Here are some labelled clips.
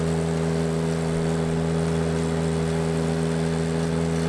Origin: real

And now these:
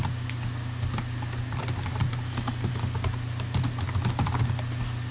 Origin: real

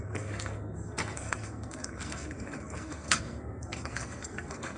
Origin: fake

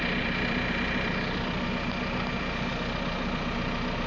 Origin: real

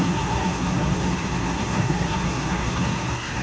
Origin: fake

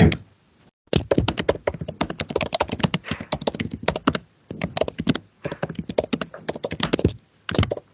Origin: real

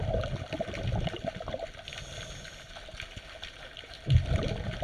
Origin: real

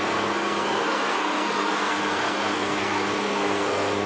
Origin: fake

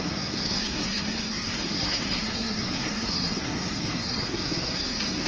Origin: fake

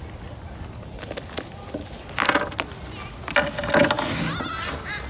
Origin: real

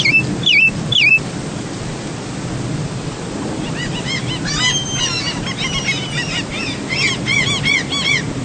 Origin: real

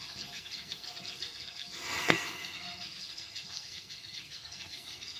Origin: fake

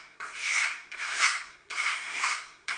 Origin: fake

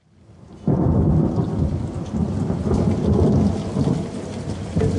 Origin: real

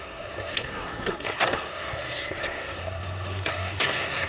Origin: fake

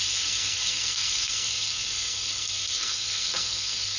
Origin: fake